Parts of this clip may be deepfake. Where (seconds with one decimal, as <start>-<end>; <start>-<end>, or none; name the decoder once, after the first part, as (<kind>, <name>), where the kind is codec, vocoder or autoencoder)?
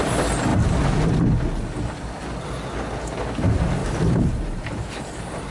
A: 3.8-5.5 (vocoder, BigVGAN v2)